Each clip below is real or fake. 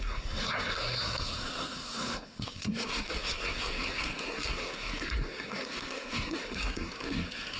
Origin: fake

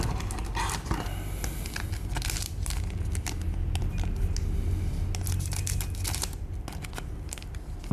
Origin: real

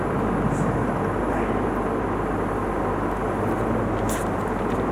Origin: real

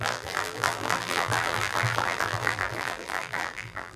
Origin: fake